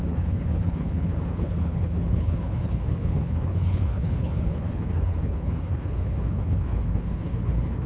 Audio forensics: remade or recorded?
remade